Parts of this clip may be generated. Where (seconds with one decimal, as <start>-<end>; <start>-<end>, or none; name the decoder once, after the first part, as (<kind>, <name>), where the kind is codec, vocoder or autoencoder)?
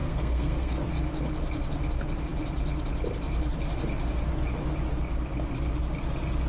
0.0-0.7 (codec, SNAC)